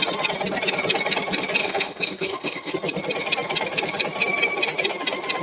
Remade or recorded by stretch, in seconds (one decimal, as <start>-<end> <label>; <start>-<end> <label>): 0.0-1.6 recorded; 1.6-2.7 remade; 2.7-5.4 recorded